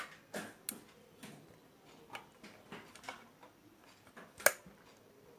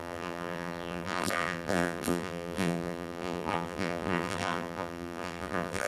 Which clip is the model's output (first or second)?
second